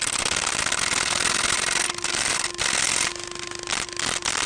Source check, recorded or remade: recorded